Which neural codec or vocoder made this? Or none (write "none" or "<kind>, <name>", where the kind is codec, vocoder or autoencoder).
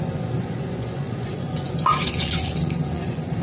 vocoder, Vocos